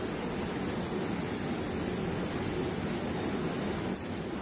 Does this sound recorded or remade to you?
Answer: recorded